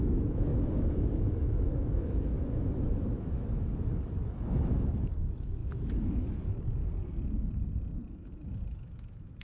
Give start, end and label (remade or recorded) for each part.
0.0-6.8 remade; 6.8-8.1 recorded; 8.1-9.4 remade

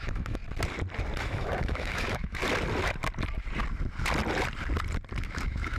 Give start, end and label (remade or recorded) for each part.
0.0-0.4 remade; 0.4-1.2 recorded; 1.2-2.4 remade; 2.4-5.2 recorded; 5.2-5.8 remade